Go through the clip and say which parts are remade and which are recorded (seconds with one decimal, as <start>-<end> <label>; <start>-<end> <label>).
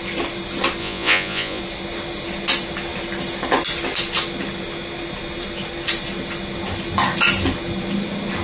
0.0-0.8 recorded; 0.8-1.6 remade; 1.6-8.4 recorded